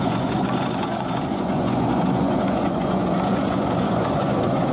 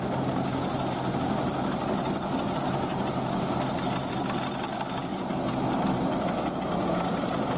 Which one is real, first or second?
second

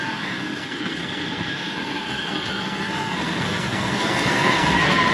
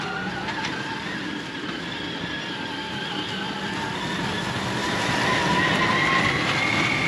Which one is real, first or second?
second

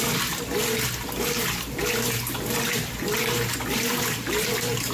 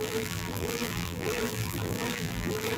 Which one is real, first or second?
first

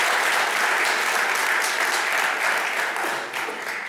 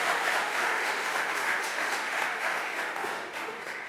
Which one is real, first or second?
first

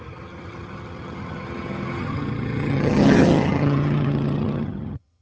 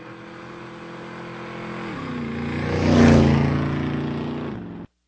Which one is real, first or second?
second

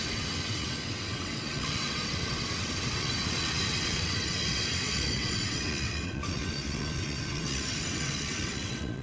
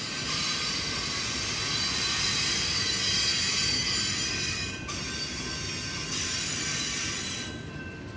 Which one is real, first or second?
second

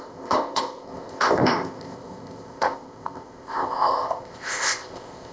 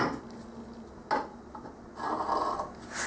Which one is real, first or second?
second